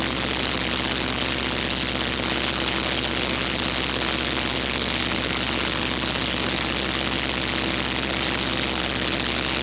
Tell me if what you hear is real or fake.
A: real